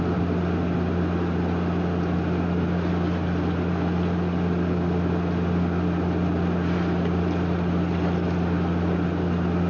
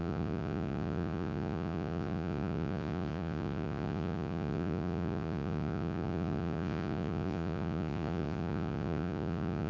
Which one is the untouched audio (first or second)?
first